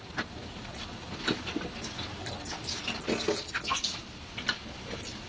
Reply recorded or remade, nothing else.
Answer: recorded